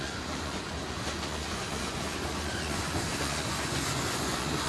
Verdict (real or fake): fake